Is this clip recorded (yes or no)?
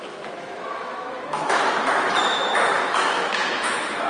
no